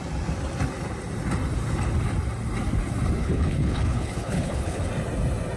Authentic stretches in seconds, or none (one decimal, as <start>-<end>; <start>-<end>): 0.0-3.2; 4.9-5.6